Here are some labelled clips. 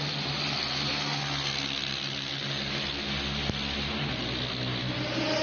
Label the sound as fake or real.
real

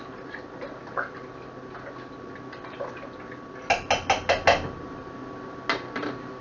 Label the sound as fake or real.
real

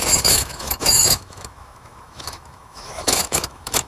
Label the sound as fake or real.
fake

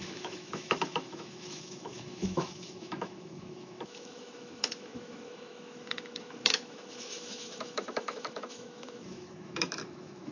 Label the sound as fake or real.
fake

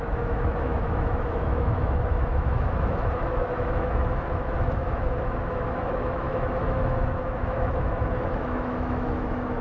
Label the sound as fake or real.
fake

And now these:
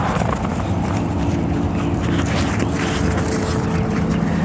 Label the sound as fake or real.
real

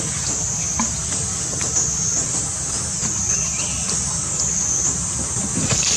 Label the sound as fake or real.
real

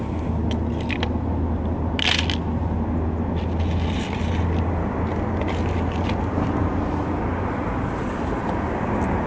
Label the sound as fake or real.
real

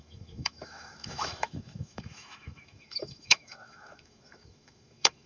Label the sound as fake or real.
fake